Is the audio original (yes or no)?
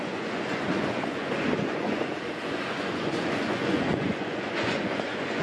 no